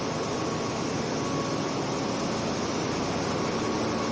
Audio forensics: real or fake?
real